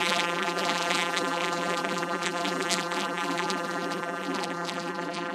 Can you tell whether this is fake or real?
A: fake